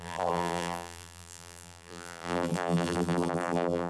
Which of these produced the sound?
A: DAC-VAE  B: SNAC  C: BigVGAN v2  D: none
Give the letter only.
C